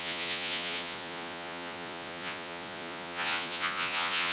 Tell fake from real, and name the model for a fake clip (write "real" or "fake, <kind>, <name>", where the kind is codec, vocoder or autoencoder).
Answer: fake, vocoder, Vocos